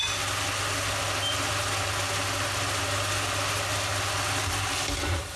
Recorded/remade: recorded